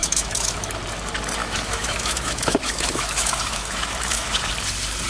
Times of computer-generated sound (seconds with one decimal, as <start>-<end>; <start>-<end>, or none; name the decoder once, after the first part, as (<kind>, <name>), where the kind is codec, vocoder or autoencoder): 0.0-0.7 (autoencoder, DAC-VAE); 1.4-4.5